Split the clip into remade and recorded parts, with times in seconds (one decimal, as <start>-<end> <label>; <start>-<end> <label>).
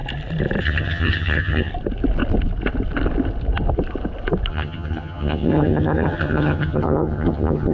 0.0-0.6 recorded; 0.6-1.7 remade; 1.7-4.5 recorded; 4.5-7.7 remade